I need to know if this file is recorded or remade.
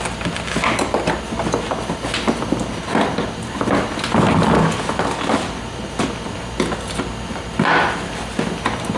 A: recorded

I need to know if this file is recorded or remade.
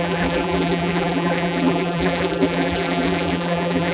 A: remade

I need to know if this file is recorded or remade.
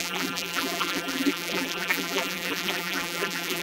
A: remade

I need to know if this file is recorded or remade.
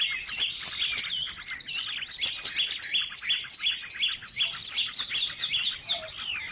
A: recorded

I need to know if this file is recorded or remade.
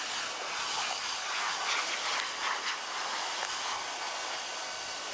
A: recorded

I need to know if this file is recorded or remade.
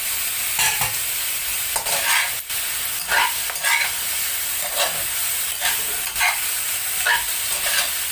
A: recorded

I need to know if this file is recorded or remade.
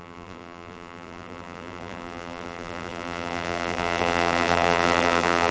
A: remade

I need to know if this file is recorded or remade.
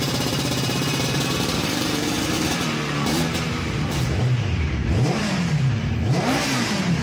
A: remade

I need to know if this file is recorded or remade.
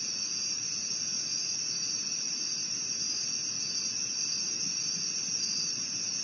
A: recorded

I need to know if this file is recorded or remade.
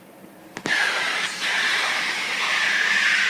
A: remade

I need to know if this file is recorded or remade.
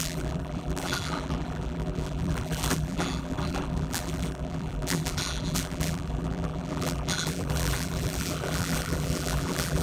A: remade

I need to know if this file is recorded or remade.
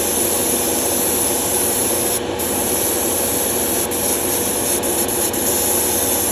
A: recorded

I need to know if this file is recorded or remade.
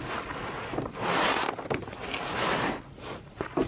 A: recorded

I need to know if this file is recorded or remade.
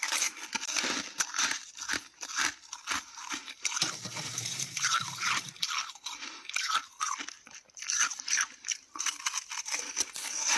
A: remade